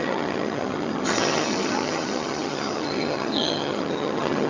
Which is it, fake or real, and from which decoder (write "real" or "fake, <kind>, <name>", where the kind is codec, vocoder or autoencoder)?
fake, vocoder, HiFi-GAN